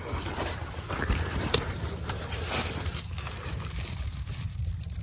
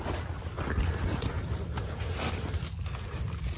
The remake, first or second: first